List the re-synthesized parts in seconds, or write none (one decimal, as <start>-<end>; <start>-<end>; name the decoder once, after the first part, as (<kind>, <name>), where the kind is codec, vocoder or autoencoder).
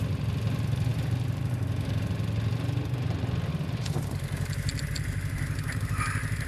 none